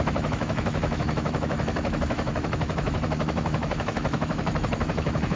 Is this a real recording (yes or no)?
no